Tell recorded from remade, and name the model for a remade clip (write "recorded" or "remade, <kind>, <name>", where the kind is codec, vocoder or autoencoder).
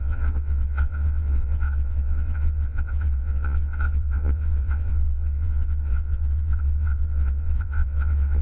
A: remade, vocoder, WaveNeXt